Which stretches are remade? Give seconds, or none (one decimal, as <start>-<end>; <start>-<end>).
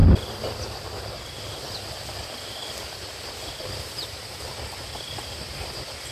none